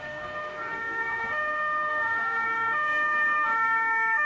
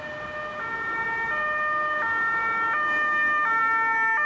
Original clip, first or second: second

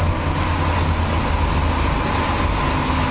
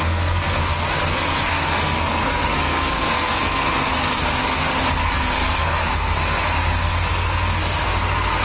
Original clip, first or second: first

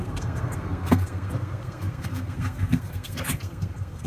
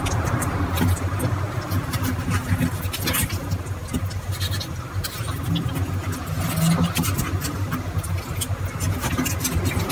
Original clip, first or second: second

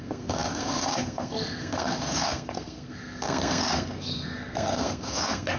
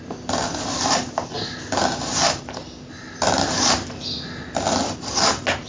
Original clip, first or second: second